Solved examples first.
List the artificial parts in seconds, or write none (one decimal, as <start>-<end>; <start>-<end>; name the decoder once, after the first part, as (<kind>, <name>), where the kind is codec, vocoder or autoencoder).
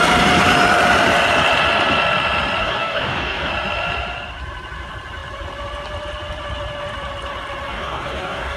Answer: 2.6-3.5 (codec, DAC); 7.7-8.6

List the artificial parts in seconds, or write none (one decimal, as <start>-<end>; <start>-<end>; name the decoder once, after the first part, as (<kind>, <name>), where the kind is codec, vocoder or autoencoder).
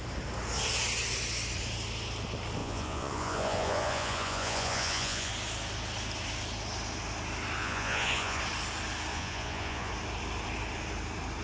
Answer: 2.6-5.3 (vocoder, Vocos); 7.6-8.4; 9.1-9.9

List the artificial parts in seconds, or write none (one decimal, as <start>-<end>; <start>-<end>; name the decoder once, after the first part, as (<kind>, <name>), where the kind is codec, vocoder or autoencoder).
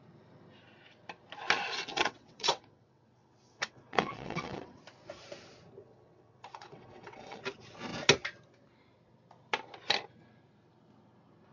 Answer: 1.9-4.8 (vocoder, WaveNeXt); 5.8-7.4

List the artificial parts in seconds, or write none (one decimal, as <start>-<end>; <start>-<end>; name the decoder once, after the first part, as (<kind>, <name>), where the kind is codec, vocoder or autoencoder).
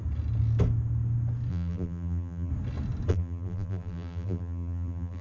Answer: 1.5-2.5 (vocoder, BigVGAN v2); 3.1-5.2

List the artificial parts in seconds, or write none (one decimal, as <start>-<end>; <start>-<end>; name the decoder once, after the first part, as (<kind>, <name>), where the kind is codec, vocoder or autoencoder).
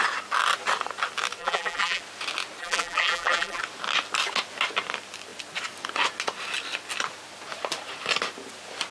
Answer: 1.4-2.0 (vocoder, BigVGAN v2); 2.6-3.6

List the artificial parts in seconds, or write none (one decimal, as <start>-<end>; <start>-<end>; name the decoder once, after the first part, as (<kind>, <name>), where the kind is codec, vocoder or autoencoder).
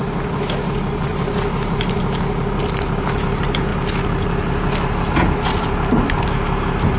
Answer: 1.1-2.0 (vocoder, BigVGAN v2)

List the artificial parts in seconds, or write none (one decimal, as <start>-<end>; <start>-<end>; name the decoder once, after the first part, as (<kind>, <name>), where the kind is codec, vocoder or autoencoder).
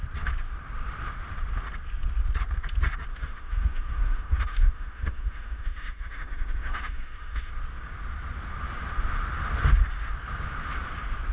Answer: 3.1-7.5 (autoencoder, DAC-VAE)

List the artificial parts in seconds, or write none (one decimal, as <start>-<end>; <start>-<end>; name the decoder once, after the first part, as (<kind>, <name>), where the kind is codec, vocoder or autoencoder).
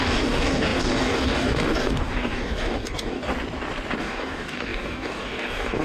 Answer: 0.0-3.3 (codec, DAC); 4.0-5.8